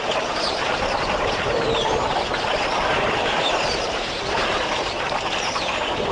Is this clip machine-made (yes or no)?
yes